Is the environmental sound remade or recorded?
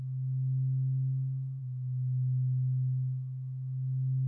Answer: recorded